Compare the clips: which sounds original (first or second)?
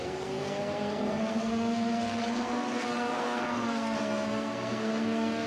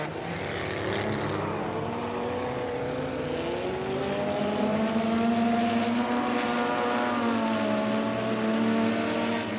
second